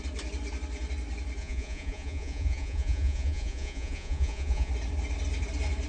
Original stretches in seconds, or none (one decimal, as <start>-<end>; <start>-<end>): 0.0-1.4; 4.7-5.9